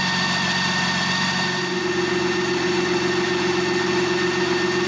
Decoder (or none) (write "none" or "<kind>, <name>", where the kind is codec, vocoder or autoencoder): none